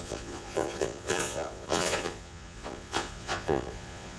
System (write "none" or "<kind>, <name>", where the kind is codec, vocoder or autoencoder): vocoder, Vocos